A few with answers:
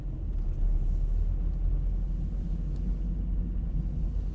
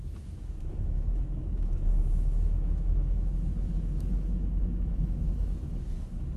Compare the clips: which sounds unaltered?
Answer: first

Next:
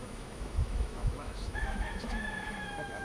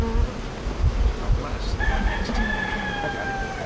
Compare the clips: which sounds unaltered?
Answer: second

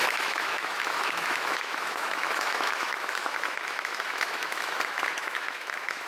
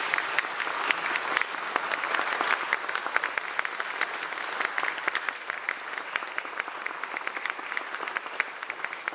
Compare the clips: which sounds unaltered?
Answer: second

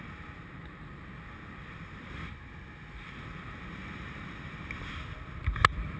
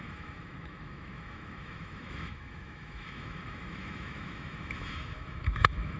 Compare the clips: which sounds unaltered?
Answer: first